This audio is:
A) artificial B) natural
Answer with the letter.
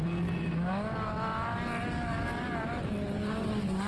B